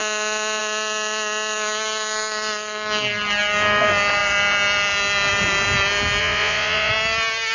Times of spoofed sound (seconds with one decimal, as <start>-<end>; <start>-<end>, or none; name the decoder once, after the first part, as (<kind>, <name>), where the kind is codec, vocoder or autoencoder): 6.2-6.9 (vocoder, Vocos)